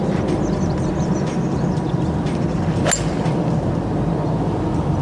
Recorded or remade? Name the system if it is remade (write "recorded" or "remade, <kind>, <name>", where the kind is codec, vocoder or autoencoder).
recorded